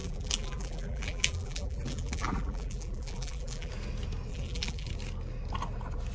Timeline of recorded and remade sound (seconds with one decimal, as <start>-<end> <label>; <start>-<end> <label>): 0.0-3.7 remade; 3.7-4.3 recorded; 4.3-4.9 remade; 4.9-6.1 recorded